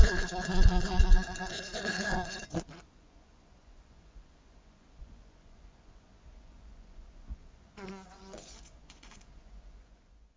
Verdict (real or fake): fake